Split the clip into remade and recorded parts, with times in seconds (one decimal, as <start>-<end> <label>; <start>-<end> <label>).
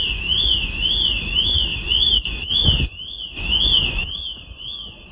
0.0-5.1 remade